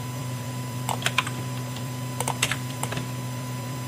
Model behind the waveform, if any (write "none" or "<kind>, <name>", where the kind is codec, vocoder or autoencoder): vocoder, BigVGAN v2